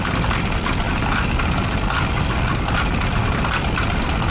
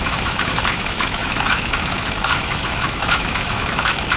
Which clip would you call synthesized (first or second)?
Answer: second